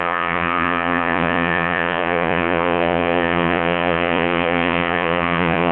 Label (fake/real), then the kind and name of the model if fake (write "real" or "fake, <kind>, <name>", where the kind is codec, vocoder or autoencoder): fake, vocoder, Vocos